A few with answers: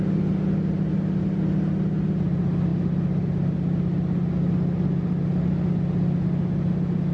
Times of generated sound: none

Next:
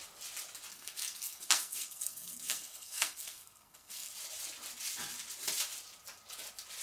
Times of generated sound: 0.7-4.1 (codec, SNAC)